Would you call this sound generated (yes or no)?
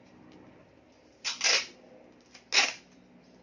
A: no